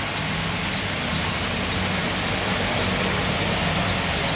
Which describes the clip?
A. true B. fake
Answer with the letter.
A